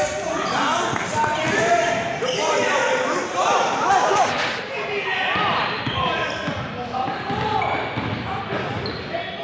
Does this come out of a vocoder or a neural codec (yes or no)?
no